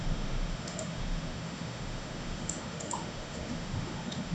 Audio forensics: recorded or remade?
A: remade